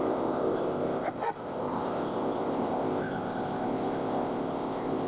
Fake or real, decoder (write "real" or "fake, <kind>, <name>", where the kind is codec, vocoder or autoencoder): fake, codec, ZipCodec